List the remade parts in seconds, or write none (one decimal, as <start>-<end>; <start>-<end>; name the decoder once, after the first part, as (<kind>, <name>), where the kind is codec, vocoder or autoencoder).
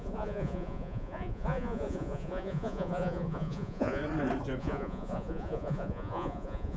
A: 0.0-4.0 (vocoder, Vocos); 4.6-6.8